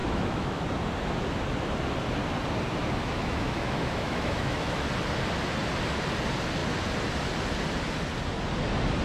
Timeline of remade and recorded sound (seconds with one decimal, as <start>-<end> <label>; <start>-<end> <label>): 0.0-0.6 remade; 0.6-3.0 recorded; 3.0-4.9 remade; 4.9-9.0 recorded